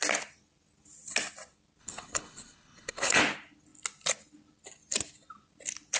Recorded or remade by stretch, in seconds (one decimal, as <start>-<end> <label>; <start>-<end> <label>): 0.0-1.8 recorded; 1.8-3.2 remade; 3.2-6.0 recorded